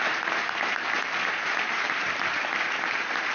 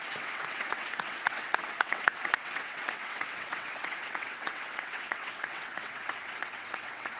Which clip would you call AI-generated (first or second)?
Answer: second